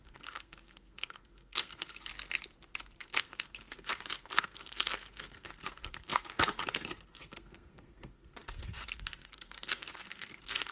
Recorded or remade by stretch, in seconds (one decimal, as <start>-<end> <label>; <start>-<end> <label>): 0.0-2.1 remade; 2.1-3.0 recorded; 3.0-10.7 remade